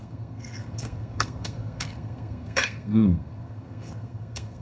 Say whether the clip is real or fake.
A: fake